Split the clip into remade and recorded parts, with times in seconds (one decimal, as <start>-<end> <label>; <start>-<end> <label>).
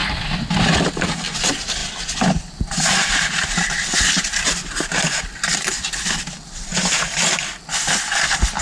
0.0-8.6 recorded